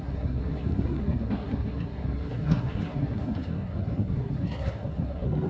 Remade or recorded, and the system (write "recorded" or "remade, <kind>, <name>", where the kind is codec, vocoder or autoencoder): remade, codec, SNAC